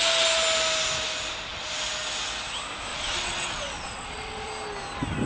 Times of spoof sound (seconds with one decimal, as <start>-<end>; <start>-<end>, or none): 2.9-4.5